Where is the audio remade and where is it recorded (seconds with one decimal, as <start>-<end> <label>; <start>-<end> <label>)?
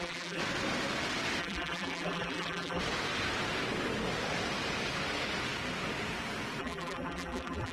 0.0-0.4 remade; 0.4-1.4 recorded; 1.4-2.8 remade; 2.8-6.6 recorded; 6.6-7.7 remade